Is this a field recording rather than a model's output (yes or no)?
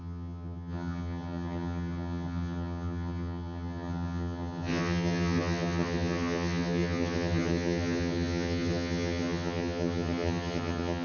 no